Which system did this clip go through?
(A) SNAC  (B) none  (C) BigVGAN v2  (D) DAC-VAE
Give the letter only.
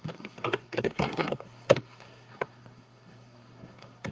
A